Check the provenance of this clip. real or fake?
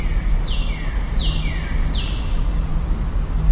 real